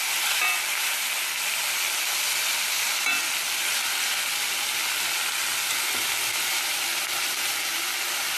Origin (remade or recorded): recorded